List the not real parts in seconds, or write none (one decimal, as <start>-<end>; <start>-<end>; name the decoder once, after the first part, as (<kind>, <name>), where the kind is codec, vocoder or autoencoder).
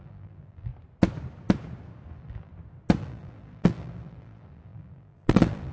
0.0-0.7 (vocoder, BigVGAN v2); 2.1-2.5; 3.0-5.7